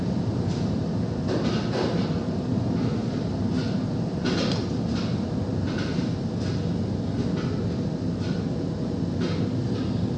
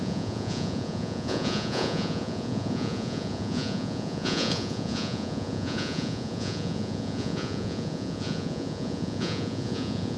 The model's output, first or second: second